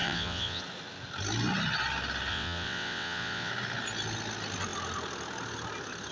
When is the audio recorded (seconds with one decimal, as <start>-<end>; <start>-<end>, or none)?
0.6-2.3; 3.5-6.1